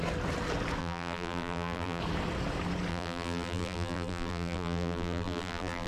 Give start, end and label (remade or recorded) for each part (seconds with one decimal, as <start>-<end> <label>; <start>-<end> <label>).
0.0-0.8 recorded; 0.8-2.0 remade; 2.0-2.9 recorded; 2.9-5.9 remade